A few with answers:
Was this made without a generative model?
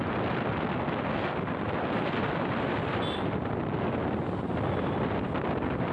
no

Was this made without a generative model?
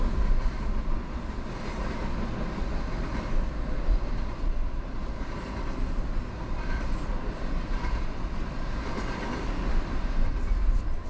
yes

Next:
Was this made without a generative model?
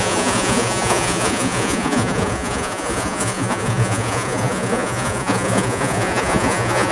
no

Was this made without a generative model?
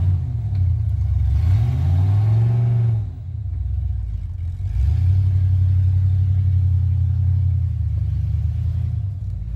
yes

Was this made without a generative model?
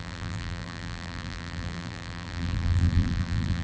no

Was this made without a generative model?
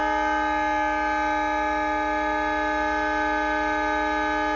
yes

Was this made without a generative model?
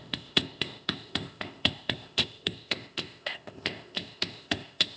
no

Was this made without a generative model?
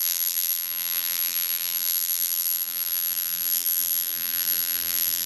no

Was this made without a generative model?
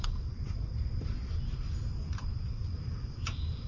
no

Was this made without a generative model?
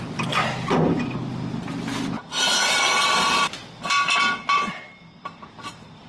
yes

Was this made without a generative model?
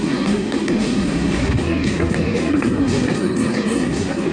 no